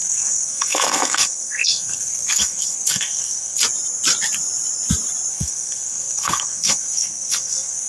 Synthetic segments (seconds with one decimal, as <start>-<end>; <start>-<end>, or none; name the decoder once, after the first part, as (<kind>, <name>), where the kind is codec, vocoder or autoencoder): 0.0-3.6 (codec, SNAC); 5.3-7.9